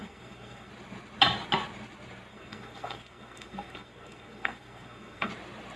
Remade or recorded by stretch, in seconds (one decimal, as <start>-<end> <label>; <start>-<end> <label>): 0.0-0.7 remade; 0.7-2.3 recorded; 2.3-5.3 remade; 5.3-5.8 recorded